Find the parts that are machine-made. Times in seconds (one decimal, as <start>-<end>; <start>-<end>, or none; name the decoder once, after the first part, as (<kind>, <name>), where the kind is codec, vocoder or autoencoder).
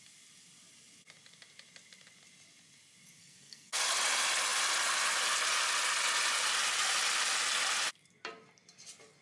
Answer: 3.2-3.8 (codec, SNAC)